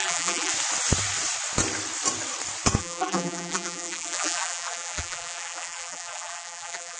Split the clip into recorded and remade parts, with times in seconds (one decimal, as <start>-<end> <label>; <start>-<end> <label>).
0.0-0.5 remade; 0.5-2.8 recorded; 2.8-7.0 remade